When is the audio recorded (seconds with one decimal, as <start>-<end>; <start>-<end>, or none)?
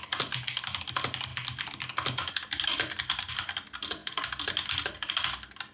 0.0-5.7